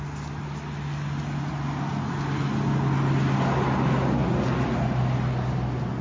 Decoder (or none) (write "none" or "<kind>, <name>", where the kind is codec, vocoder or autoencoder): none